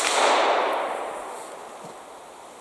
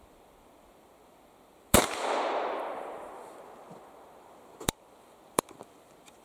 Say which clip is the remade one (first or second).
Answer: second